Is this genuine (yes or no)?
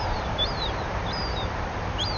no